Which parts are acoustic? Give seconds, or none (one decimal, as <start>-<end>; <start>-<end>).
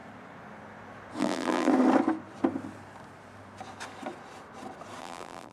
0.0-1.2; 1.7-5.0